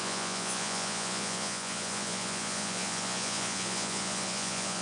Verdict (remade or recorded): remade